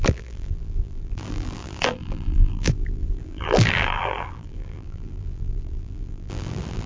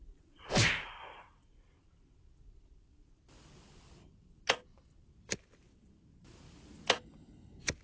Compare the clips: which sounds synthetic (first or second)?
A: first